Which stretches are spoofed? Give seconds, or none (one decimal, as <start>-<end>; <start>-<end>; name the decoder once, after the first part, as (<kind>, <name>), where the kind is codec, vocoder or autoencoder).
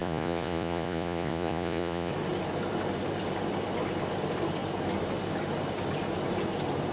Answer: 0.0-2.1 (vocoder, Vocos)